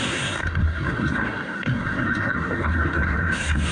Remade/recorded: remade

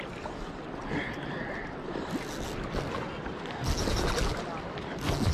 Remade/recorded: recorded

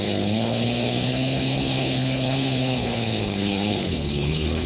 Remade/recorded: remade